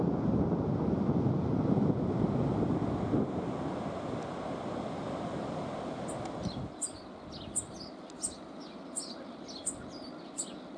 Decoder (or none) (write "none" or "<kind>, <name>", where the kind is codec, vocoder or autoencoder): none